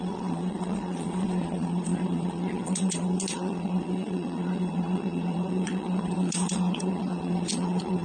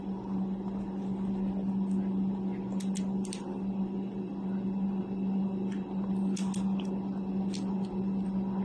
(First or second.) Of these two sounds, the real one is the second